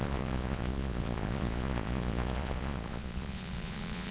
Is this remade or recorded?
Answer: remade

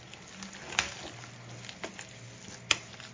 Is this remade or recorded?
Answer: recorded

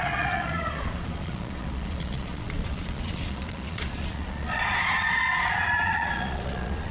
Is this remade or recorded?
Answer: remade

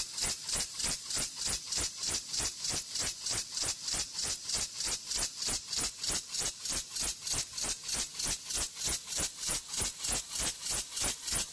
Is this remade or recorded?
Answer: recorded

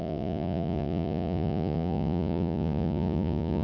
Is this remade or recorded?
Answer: remade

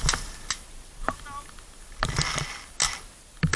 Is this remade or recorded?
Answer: recorded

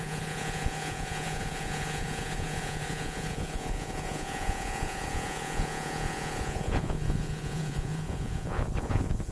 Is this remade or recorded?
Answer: remade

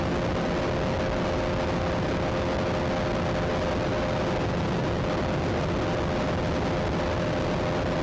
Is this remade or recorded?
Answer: recorded